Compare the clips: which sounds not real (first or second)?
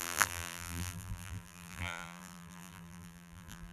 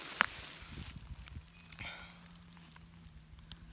first